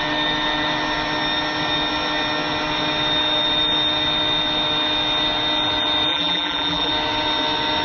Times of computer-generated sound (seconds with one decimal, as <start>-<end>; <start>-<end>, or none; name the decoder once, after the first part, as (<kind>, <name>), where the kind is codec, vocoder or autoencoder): 6.1-6.9 (vocoder, BigVGAN v2)